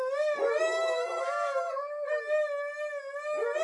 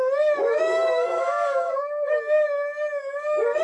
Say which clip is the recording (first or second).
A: first